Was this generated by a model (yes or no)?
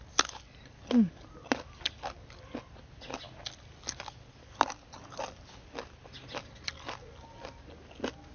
no